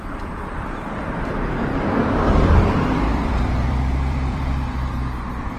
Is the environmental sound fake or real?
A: fake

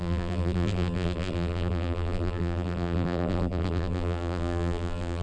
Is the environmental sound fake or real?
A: fake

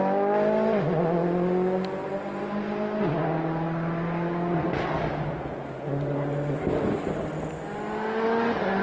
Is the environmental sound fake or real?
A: real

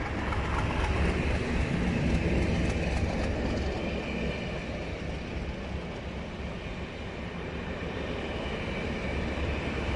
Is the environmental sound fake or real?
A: real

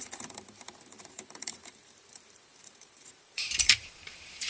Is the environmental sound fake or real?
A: fake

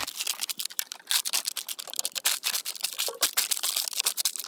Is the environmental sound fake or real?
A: real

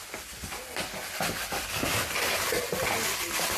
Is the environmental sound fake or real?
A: real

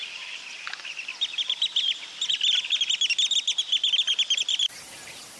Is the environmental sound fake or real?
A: real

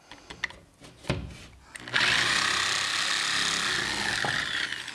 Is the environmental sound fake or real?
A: real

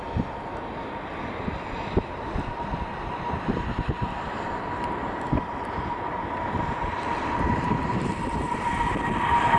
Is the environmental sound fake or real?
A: fake